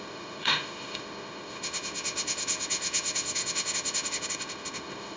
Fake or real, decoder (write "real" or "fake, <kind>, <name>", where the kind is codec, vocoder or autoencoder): fake, autoencoder, DAC-VAE